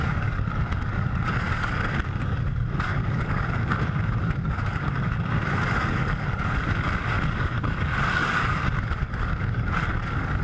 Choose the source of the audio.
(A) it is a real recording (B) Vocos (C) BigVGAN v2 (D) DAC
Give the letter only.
D